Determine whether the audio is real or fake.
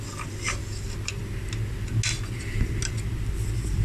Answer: real